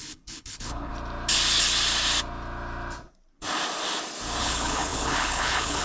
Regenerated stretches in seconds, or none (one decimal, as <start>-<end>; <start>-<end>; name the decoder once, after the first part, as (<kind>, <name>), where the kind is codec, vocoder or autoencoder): 0.0-0.9 (codec, HILCodec); 4.4-5.8